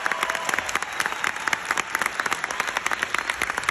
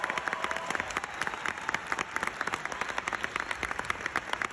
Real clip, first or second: first